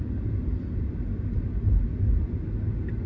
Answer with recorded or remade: recorded